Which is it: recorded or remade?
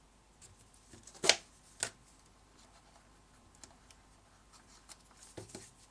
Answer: recorded